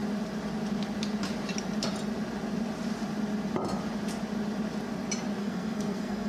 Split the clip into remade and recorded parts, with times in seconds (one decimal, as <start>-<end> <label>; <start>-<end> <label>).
0.0-5.4 recorded; 5.4-6.3 remade